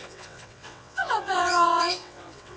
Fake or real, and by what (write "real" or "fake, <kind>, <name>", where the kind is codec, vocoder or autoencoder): fake, vocoder, WaveNeXt